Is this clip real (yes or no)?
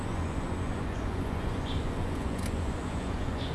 no